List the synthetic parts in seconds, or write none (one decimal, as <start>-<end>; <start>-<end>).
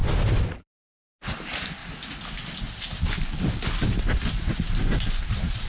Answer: 0.0-1.8; 5.2-5.7